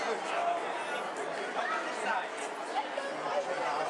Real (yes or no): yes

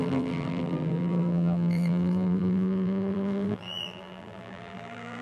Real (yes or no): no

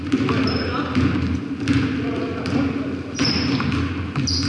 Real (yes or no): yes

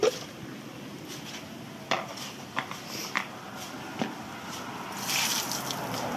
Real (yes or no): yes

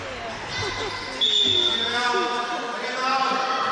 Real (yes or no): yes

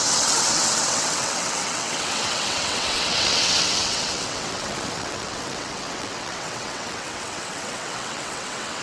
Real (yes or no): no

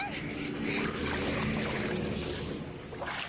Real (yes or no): yes